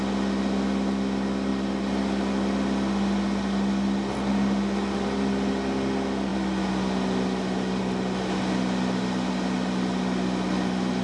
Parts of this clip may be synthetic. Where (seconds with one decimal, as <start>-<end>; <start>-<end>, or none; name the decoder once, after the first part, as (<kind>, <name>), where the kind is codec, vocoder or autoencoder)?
none